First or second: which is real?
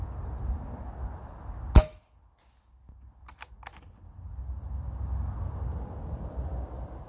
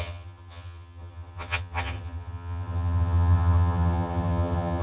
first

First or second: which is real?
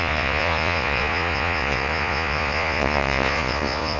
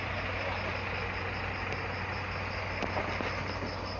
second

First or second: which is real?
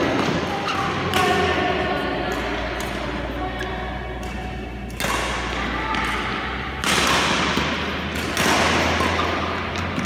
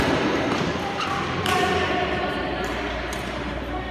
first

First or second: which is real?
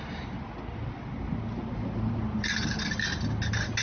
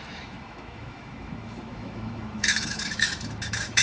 first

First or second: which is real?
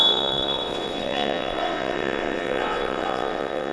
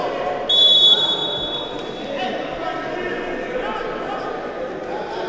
second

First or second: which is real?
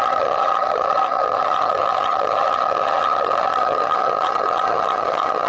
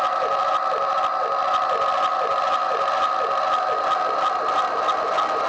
second